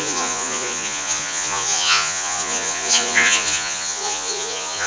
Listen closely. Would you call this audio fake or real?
fake